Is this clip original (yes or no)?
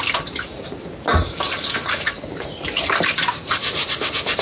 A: yes